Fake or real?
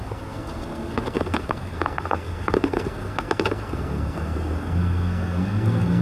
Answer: fake